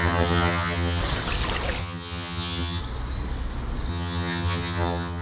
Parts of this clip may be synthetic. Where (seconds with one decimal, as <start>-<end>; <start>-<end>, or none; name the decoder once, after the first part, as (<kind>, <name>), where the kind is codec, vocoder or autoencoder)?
0.0-1.0 (vocoder, HiFi-GAN); 1.8-2.8; 3.9-5.2